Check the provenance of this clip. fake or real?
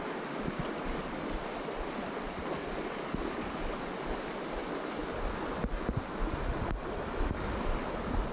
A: real